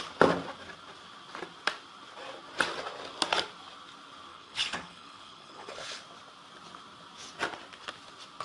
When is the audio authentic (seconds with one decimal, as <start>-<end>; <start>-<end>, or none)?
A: 0.0-4.3; 6.0-8.4